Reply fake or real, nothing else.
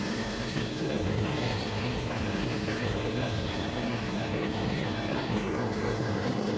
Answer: fake